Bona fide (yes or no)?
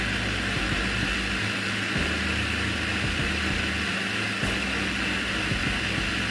yes